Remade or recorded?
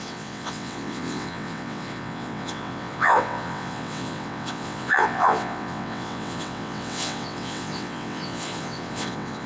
remade